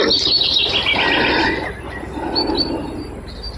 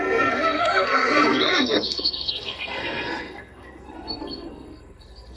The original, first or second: first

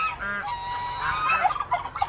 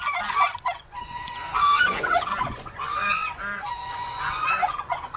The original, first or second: first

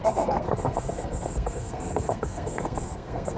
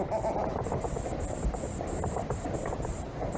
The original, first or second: second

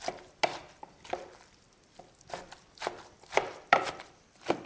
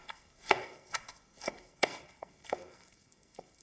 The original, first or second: first